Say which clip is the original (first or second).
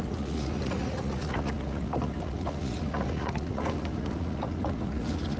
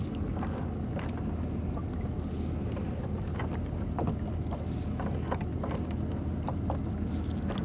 second